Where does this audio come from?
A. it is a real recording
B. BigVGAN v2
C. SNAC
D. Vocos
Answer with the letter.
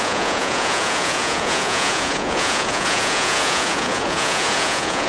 D